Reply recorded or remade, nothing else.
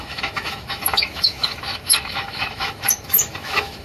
remade